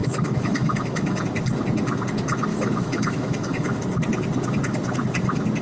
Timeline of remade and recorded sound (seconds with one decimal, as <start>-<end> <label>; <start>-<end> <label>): 0.0-1.2 remade; 1.2-2.5 recorded; 2.5-3.8 remade; 3.8-5.6 recorded